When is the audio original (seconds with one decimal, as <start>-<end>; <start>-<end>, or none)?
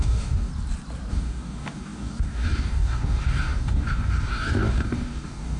0.5-1.1